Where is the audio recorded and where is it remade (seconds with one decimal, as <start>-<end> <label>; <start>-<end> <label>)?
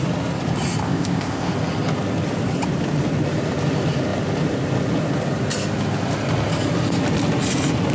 0.0-0.8 recorded; 0.8-1.5 remade; 1.5-7.9 recorded